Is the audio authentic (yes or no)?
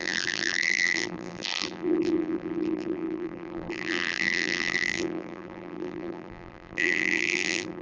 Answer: no